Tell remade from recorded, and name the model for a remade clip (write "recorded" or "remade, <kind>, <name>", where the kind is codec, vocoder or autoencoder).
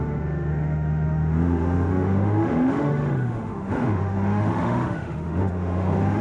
remade, autoencoder, DAC-VAE